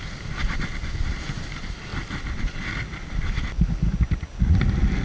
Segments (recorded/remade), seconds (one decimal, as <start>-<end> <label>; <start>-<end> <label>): 0.0-5.0 recorded